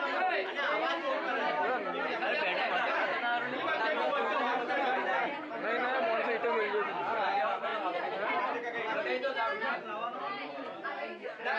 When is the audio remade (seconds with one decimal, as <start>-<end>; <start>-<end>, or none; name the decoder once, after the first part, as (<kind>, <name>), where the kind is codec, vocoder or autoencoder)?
none